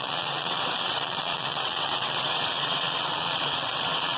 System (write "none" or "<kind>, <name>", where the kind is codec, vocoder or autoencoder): vocoder, WaveNeXt